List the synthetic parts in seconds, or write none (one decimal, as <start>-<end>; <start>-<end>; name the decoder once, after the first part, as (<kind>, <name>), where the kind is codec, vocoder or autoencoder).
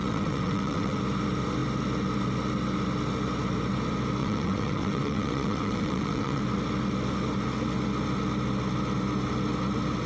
0.0-1.0 (vocoder, WaveNeXt); 4.2-6.4